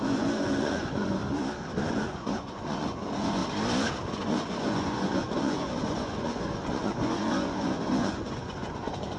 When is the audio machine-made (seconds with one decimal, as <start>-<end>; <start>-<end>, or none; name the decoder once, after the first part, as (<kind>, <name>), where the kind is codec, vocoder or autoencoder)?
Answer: 0.0-1.2 (vocoder, Vocos); 1.9-3.4; 4.1-9.2

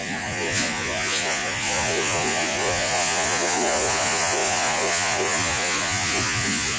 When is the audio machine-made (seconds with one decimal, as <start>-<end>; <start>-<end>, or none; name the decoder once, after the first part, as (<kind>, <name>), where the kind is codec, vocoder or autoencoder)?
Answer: 0.0-6.8 (vocoder, Vocos)

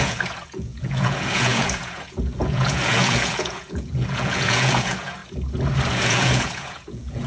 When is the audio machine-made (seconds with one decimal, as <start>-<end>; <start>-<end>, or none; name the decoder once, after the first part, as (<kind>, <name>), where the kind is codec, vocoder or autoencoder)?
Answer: 0.0-5.2 (vocoder, Vocos); 5.9-7.3

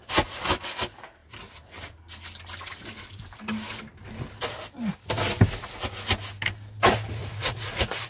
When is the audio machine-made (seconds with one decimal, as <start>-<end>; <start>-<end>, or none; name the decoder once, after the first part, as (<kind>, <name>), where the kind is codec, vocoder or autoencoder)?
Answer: 7.2-8.1 (vocoder, Vocos)

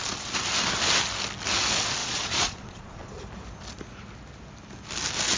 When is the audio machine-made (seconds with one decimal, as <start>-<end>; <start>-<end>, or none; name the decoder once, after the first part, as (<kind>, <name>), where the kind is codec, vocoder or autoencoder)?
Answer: 2.0-3.1 (vocoder, Vocos)